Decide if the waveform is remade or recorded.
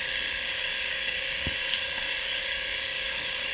remade